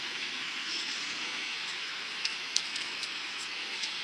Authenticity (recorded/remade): remade